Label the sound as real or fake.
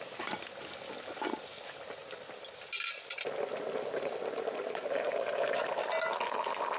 real